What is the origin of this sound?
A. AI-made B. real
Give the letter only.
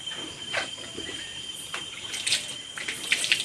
A